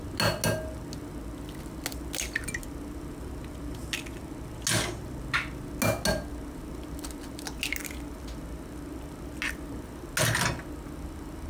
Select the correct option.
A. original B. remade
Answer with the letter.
A